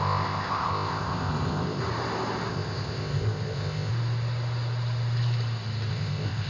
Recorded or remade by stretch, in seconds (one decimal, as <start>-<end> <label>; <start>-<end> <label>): 0.0-1.8 remade; 1.8-2.5 recorded; 2.5-3.9 remade; 3.9-5.9 recorded; 5.9-6.5 remade